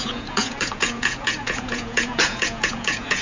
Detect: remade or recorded remade